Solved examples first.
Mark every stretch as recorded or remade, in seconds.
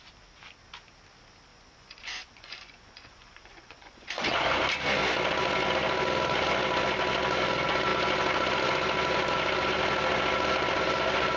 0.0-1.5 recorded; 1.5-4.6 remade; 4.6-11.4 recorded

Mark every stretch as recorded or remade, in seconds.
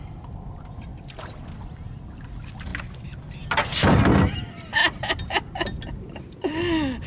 0.0-7.1 recorded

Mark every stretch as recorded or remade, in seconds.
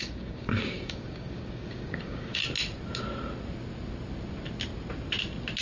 0.0-2.4 remade; 2.4-5.6 recorded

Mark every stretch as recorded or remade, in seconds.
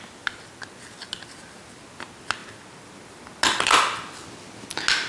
0.0-5.1 recorded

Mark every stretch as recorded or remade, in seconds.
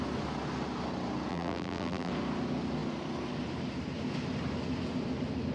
0.0-1.3 recorded; 1.3-2.1 remade; 2.1-5.5 recorded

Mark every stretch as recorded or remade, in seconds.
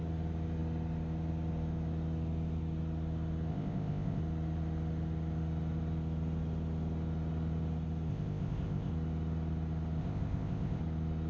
0.0-3.5 recorded; 3.5-4.2 remade; 4.2-8.1 recorded; 8.1-8.9 remade; 8.9-10.0 recorded; 10.0-10.8 remade; 10.8-11.3 recorded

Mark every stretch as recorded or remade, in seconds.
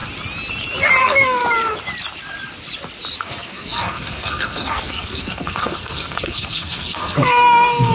0.0-1.0 recorded; 1.0-1.4 remade; 1.4-3.2 recorded; 3.2-7.9 remade